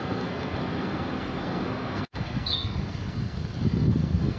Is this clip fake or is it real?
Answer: fake